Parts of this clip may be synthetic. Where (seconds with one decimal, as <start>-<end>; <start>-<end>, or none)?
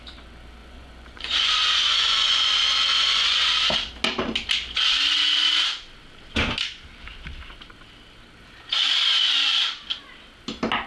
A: 0.6-2.5; 2.9-3.5